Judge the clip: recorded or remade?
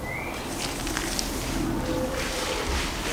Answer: recorded